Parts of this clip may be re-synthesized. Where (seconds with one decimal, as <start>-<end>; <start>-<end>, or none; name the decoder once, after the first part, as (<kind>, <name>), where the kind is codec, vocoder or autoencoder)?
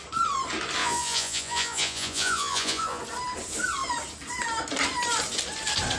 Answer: 0.8-3.0 (vocoder, Vocos)